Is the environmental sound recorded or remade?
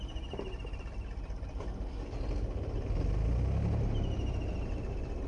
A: recorded